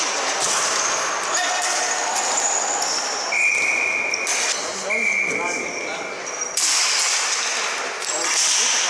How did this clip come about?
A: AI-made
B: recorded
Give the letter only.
B